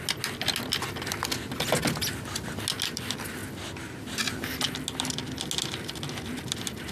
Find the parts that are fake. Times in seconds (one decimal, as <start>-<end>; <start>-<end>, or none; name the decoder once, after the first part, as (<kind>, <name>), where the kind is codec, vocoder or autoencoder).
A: none